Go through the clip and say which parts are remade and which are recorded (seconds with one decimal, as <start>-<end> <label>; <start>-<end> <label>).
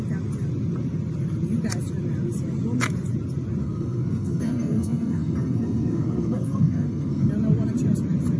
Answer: 0.0-3.6 recorded; 3.6-7.3 remade; 7.3-8.4 recorded